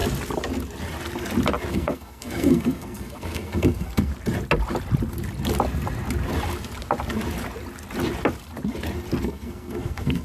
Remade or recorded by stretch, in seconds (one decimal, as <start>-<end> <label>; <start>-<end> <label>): 0.0-1.7 recorded; 1.7-4.1 remade; 4.1-9.2 recorded; 9.2-10.2 remade